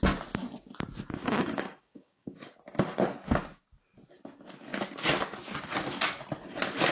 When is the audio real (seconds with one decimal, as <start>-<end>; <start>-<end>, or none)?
0.0-1.2; 2.6-6.9

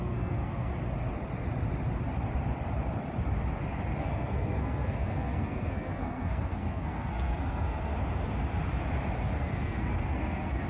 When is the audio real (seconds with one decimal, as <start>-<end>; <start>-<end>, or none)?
0.7-4.0; 7.9-9.2

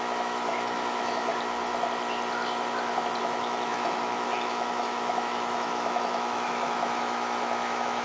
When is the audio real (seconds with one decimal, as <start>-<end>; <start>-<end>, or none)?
1.3-3.2

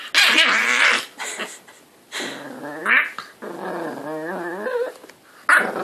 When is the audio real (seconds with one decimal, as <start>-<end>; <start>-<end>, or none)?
0.0-5.8

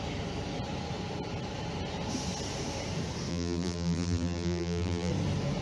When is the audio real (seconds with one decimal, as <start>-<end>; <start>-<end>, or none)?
0.0-3.3; 5.1-5.6

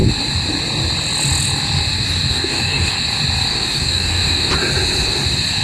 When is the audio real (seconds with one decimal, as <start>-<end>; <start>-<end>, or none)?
0.0-2.3; 2.9-3.5; 4.5-5.6